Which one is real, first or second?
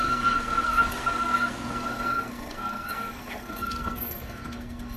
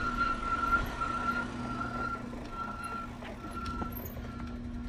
second